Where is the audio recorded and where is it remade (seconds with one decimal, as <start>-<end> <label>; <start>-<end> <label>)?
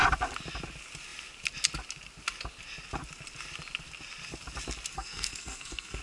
0.0-4.9 recorded; 4.9-6.0 remade